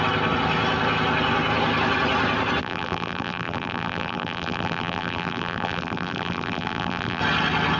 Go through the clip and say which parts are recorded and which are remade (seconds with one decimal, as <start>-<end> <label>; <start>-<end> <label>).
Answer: 0.0-2.6 recorded; 2.6-7.2 remade; 7.2-7.8 recorded